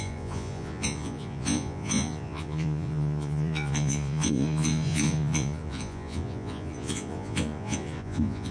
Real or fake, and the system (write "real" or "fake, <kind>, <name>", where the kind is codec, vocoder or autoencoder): fake, vocoder, Vocos